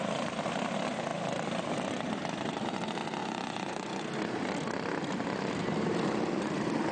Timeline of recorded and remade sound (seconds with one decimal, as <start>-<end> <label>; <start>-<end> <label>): 0.0-3.2 recorded; 3.2-4.0 remade; 4.0-6.9 recorded